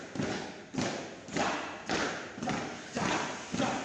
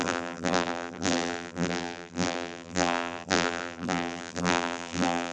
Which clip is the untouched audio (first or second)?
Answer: first